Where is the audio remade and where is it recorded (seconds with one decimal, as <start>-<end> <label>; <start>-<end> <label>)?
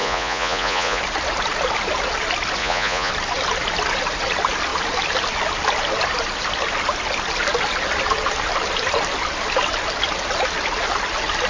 0.0-1.0 remade; 1.0-2.6 recorded; 2.6-3.1 remade; 3.1-11.5 recorded